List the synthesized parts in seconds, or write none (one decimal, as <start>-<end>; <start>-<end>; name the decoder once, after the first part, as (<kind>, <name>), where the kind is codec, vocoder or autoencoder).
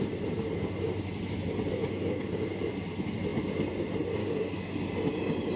1.8-2.7 (codec, DAC); 4.2-4.8